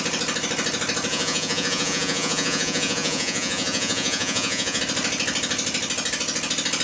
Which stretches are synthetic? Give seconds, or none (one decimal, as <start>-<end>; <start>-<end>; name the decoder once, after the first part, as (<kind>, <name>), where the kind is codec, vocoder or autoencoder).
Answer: 1.1-4.8 (vocoder, Vocos)